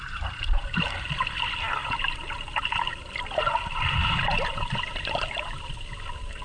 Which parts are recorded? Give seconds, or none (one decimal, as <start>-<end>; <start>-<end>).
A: 1.1-1.8; 5.6-6.4